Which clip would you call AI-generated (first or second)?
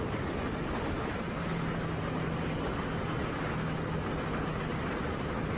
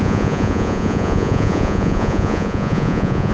second